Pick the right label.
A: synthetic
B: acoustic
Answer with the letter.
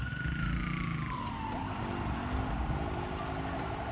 B